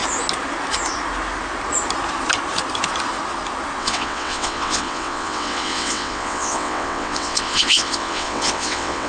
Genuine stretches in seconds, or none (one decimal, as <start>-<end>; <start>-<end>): 0.0-3.8